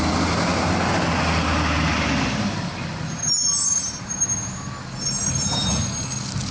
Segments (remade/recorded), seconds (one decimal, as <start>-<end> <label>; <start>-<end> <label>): 0.0-6.5 recorded